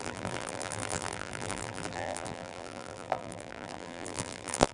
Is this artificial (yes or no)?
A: yes